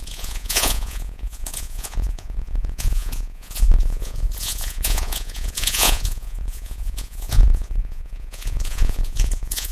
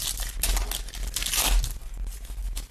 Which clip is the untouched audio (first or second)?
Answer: second